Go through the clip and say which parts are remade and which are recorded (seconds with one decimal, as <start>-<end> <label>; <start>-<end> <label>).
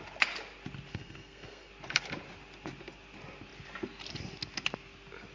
0.0-0.9 recorded; 0.9-1.7 remade; 1.7-5.3 recorded